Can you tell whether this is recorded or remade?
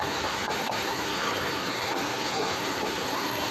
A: remade